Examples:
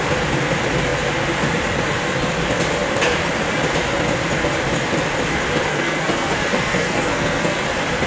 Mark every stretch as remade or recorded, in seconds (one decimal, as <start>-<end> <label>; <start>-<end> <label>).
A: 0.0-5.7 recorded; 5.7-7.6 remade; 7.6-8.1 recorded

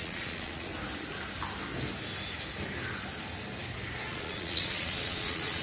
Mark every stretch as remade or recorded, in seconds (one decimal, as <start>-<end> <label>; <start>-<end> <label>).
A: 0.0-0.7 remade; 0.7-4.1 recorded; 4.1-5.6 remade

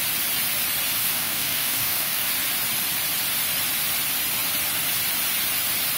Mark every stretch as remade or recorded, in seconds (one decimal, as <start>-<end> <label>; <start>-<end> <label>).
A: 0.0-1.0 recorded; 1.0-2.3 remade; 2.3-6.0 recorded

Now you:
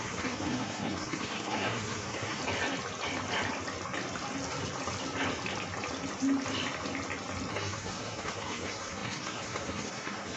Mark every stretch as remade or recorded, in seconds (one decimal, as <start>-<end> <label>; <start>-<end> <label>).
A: 0.0-2.4 remade; 2.4-7.5 recorded; 7.5-10.4 remade

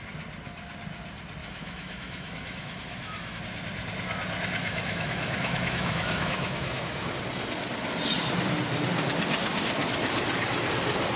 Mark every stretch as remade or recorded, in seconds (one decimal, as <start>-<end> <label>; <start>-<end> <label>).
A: 0.0-1.4 recorded; 1.4-3.4 remade; 3.4-4.6 recorded; 4.6-7.1 remade; 7.1-11.2 recorded

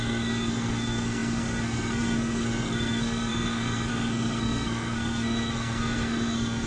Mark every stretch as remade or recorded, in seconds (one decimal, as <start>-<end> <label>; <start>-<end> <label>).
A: 0.0-6.7 remade